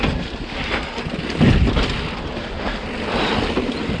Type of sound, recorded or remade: recorded